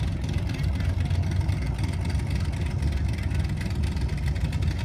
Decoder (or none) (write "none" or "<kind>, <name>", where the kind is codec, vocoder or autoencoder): none